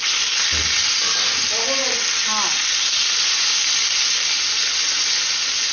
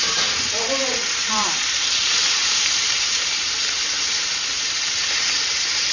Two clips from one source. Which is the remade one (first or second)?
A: second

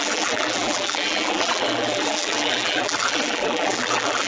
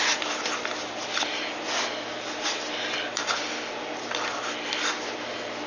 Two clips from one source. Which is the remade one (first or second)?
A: first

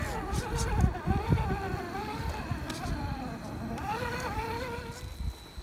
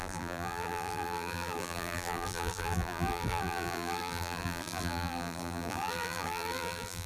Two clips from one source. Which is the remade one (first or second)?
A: second